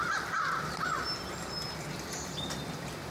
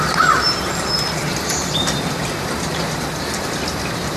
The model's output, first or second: second